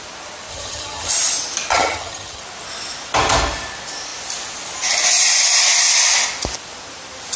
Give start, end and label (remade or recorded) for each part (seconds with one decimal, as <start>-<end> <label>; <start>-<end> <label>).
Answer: 0.0-0.5 recorded; 0.5-1.1 remade; 1.1-1.7 recorded; 1.7-2.4 remade; 2.4-7.4 recorded